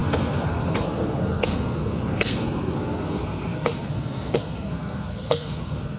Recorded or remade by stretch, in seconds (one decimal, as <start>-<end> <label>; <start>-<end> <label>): 0.0-6.0 remade